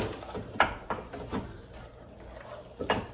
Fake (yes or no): no